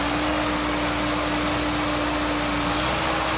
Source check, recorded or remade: recorded